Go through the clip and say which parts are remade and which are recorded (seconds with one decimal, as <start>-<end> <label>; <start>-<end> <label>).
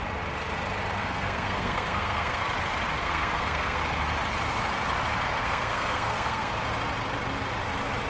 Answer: 0.0-1.0 recorded; 1.0-2.4 remade; 2.4-3.0 recorded; 3.0-3.8 remade; 3.8-5.4 recorded; 5.4-6.5 remade; 6.5-8.1 recorded